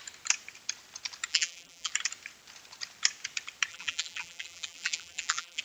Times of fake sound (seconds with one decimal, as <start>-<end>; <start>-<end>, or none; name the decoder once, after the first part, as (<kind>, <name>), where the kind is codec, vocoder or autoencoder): 1.3-1.9 (vocoder, BigVGAN v2); 3.7-5.6